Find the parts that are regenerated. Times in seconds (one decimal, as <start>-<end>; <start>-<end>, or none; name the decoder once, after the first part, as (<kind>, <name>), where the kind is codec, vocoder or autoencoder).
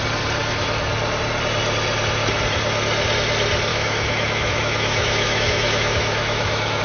3.7-6.8 (autoencoder, DAC-VAE)